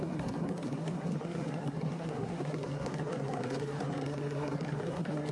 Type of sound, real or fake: fake